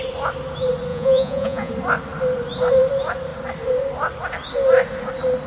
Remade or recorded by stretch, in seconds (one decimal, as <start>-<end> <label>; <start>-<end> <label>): 0.0-0.9 recorded; 0.9-1.7 remade; 1.7-5.5 recorded